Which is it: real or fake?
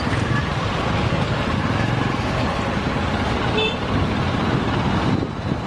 real